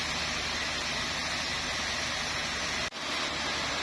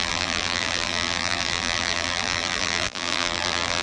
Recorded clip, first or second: first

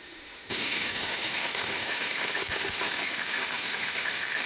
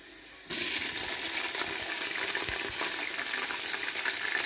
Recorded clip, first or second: second